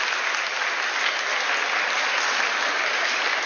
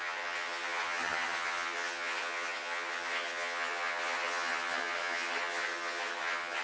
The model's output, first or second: second